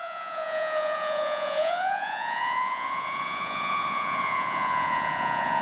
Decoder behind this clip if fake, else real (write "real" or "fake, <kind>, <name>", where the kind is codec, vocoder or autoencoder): fake, vocoder, Vocos